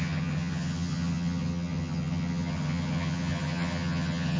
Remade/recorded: remade